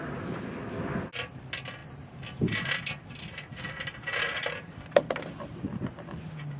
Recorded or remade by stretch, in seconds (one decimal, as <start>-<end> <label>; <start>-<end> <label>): 0.0-1.8 recorded; 1.8-3.1 remade; 3.1-4.4 recorded; 4.4-5.5 remade; 5.5-6.6 recorded